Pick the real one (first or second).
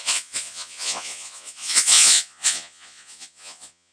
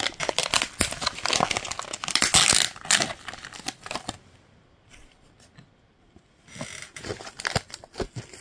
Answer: second